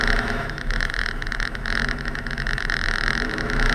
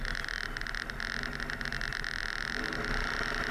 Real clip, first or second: second